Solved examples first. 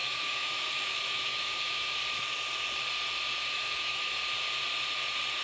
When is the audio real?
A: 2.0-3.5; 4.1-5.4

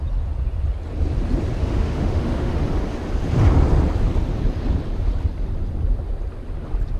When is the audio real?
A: 0.0-1.6; 2.5-7.0

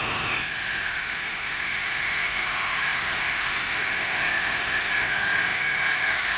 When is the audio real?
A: none